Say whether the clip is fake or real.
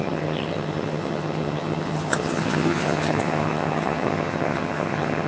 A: fake